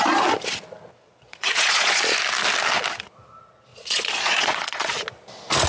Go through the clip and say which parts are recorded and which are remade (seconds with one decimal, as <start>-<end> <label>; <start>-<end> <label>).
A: 0.0-1.0 recorded; 1.0-2.0 remade; 2.0-3.7 recorded; 3.7-5.0 remade; 5.0-5.7 recorded